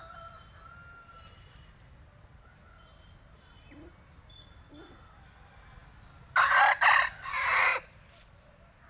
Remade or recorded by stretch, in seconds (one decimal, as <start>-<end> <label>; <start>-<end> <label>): 0.0-7.7 recorded; 7.7-8.9 remade